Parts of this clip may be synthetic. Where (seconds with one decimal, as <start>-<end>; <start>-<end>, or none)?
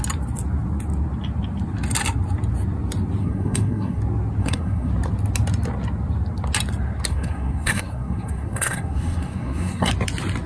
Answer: 3.2-4.0; 4.4-4.9; 7.1-9.9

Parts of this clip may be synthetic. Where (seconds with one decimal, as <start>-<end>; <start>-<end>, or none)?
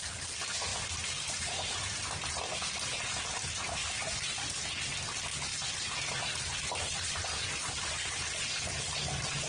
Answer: none